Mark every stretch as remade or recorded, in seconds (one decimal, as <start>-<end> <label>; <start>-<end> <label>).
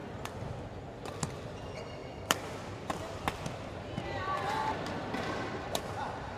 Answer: 0.0-0.6 remade; 0.6-2.0 recorded; 2.0-5.8 remade; 5.8-6.4 recorded